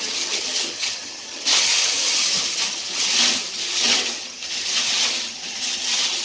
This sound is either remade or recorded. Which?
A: remade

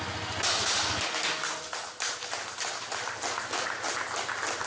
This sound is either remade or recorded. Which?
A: recorded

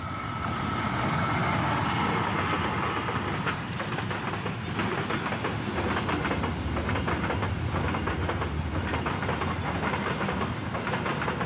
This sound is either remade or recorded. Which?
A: recorded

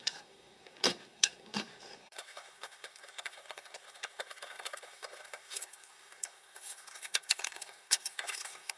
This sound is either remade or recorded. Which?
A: remade